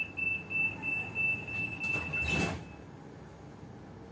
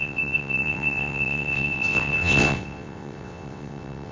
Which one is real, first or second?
first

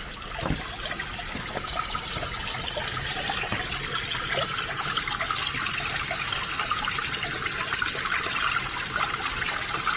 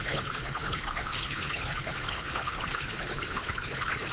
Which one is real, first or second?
first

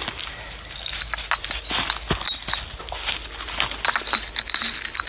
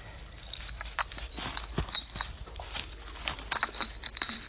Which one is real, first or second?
first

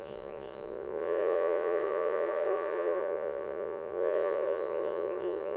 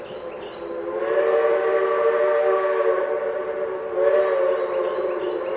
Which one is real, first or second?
second